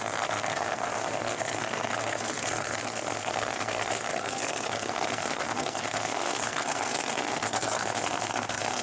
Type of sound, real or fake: fake